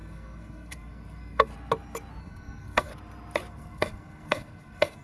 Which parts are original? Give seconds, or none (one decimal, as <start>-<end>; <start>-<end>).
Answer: 1.5-2.2; 2.9-3.5